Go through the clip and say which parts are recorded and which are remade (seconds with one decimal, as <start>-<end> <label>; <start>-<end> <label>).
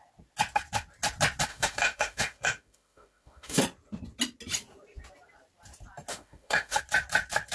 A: 0.0-1.5 recorded; 1.5-3.6 remade; 3.6-6.1 recorded; 6.1-6.8 remade; 6.8-7.5 recorded